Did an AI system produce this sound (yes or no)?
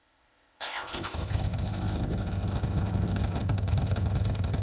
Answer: yes